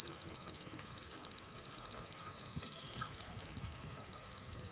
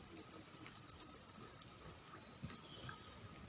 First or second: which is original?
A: second